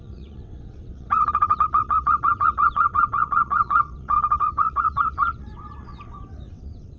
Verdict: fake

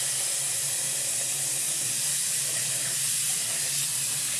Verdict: real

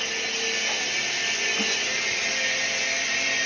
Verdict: real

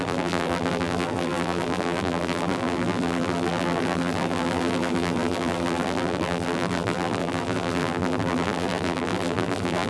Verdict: fake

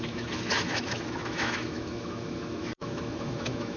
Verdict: fake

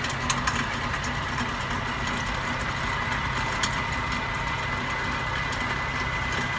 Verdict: real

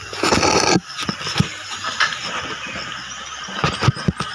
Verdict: real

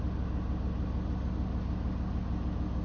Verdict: real